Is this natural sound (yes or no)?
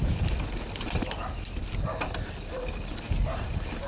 yes